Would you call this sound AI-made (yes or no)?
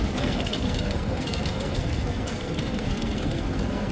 yes